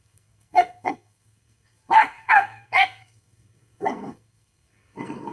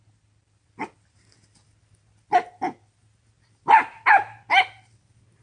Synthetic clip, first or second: first